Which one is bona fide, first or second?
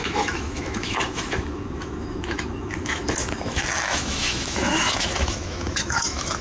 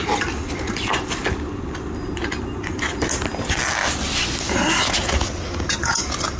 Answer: second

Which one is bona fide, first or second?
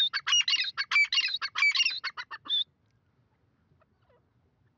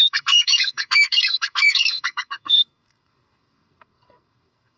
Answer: first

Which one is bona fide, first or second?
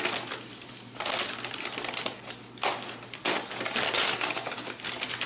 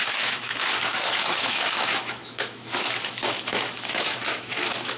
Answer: first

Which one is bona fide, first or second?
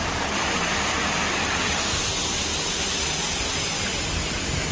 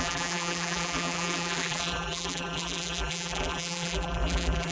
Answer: first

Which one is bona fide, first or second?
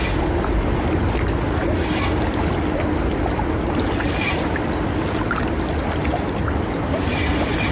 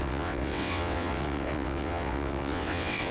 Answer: first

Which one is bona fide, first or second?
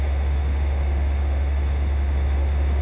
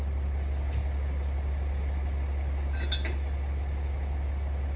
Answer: second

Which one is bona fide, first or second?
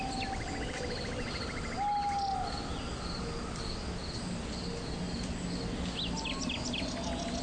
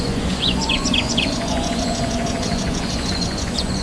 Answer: first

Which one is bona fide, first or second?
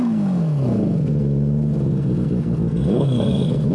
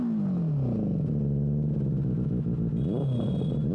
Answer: second